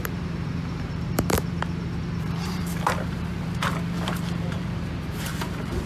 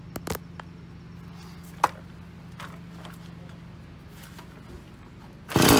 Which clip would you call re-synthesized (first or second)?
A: first